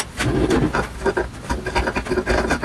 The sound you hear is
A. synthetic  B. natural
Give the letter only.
B